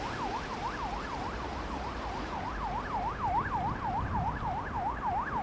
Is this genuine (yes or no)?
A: yes